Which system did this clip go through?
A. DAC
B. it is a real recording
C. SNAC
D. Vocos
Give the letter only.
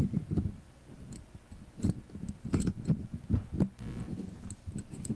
B